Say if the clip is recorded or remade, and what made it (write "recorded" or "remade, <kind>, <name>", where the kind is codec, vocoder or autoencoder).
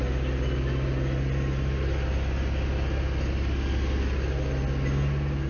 recorded